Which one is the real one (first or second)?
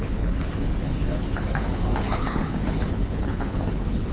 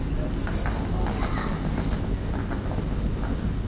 second